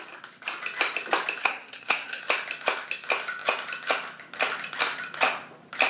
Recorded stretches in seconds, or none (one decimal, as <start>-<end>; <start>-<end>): 0.0-1.4; 2.2-5.9